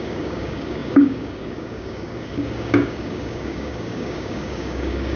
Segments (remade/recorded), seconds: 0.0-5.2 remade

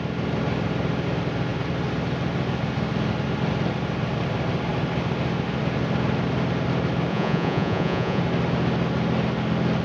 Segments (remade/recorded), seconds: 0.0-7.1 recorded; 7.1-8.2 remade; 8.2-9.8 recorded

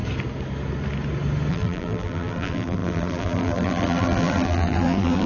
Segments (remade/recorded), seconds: 0.0-1.5 recorded; 1.5-5.3 remade

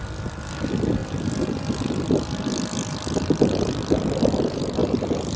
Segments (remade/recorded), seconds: 0.0-4.8 recorded; 4.8-5.4 remade

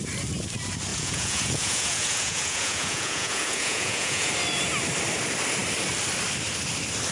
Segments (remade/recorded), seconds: 0.0-0.9 recorded; 0.9-4.3 remade; 4.3-7.1 recorded